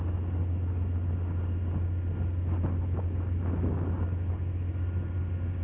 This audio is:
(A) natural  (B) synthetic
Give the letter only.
A